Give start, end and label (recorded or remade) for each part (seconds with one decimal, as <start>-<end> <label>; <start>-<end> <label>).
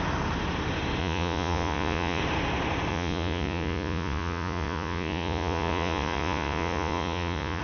0.0-1.0 recorded; 1.0-2.2 remade; 2.2-2.9 recorded; 2.9-7.6 remade